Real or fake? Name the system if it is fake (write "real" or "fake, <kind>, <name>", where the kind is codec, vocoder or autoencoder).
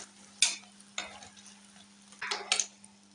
real